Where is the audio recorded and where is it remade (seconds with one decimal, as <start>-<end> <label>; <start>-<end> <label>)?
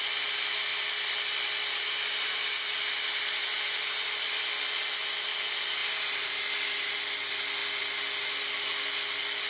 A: 0.0-9.5 recorded